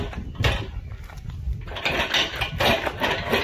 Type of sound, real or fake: real